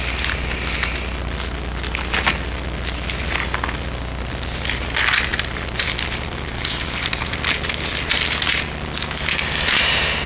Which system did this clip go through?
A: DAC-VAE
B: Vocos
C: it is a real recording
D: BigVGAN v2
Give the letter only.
C